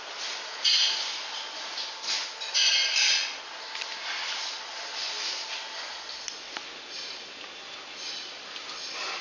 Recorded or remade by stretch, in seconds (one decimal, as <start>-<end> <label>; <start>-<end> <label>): 0.0-9.2 recorded